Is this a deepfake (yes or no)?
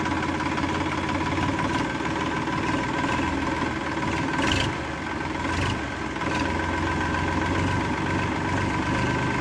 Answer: no